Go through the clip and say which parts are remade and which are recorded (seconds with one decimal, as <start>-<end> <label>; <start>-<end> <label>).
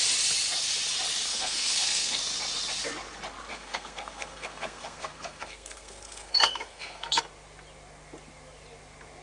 0.0-1.3 recorded; 1.3-2.2 remade; 2.2-3.5 recorded; 3.5-7.2 remade; 7.2-9.2 recorded